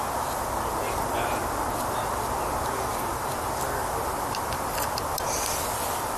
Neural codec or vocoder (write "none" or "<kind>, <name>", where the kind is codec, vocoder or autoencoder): none